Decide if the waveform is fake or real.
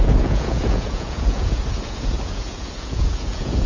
fake